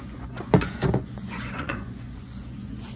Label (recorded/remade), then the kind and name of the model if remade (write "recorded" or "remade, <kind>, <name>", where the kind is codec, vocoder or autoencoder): remade, vocoder, Vocos